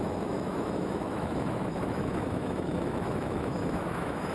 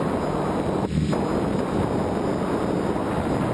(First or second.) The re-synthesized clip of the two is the first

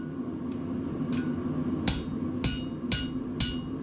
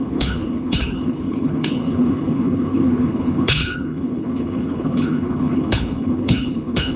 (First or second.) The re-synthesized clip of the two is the second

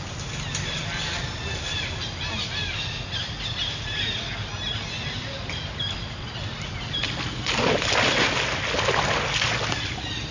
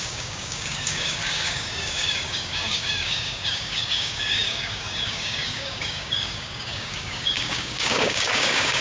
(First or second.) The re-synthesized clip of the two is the second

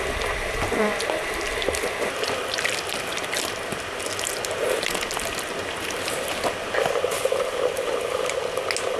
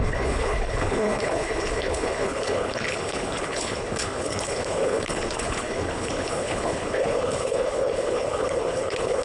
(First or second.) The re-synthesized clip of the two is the second